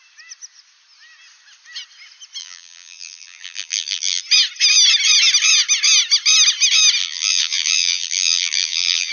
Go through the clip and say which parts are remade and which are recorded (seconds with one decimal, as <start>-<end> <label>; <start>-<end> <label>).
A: 0.0-2.4 recorded; 2.4-4.2 remade; 4.2-7.0 recorded; 7.0-9.1 remade